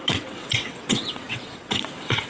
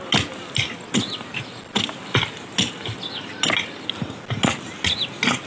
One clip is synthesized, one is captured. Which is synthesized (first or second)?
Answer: first